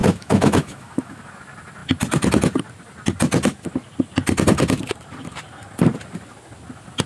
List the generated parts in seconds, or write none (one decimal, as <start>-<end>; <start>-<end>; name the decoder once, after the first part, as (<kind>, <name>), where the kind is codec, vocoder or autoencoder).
0.0-1.2 (autoencoder, DAC-VAE)

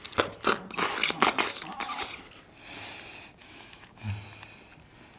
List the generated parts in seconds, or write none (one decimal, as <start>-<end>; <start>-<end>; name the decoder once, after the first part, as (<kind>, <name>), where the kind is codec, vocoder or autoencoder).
3.4-4.1 (autoencoder, DAC-VAE)